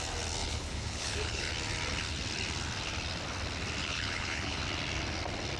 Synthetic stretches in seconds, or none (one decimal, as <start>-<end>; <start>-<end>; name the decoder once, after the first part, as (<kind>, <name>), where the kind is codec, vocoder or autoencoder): 0.4-1.5 (codec, HILCodec); 3.8-4.6